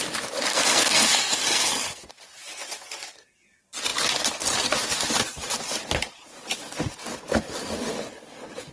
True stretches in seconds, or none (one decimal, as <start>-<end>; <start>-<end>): 0.0-0.5; 2.1-8.7

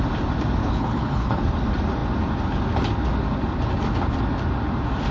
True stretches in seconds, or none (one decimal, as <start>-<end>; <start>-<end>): 0.0-0.6; 1.4-5.1

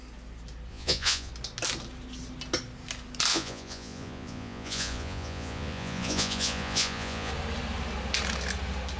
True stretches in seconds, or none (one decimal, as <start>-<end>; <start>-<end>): 0.0-0.7; 1.3-3.3; 7.3-9.0

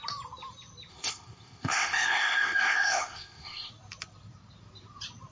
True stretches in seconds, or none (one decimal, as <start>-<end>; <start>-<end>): 0.0-0.9; 3.7-5.3

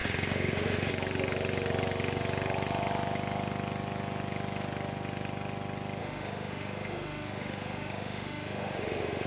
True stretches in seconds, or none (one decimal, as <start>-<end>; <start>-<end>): 0.9-6.0